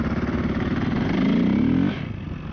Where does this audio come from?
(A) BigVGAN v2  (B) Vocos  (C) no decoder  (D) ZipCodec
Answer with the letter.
C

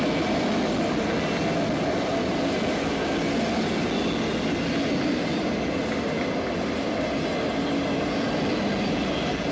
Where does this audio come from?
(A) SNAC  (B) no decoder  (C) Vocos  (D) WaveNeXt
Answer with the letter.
B